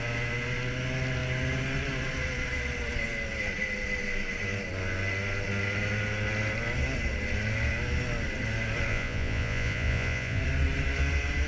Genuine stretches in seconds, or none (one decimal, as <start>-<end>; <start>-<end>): 0.0-8.9; 10.4-11.5